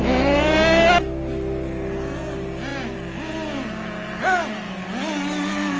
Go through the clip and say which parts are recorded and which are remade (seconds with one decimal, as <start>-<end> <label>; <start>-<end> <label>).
0.0-5.8 recorded